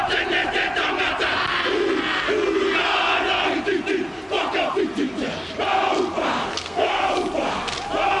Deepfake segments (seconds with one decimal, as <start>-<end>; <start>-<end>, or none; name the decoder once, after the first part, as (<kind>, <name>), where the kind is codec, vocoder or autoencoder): 6.5-7.0 (codec, SNAC)